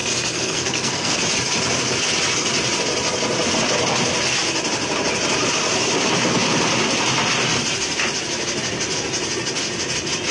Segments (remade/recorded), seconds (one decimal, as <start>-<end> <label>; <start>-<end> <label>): 0.0-1.2 remade; 1.2-10.3 recorded